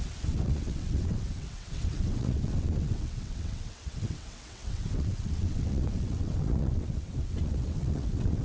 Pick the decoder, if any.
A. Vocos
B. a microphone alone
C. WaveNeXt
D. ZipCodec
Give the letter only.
C